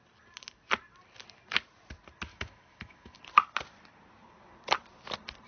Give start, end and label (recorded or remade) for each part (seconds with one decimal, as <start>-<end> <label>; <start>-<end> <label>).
0.0-2.3 recorded; 2.3-3.2 remade; 3.2-5.5 recorded